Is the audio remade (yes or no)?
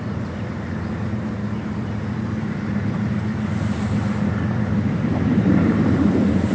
yes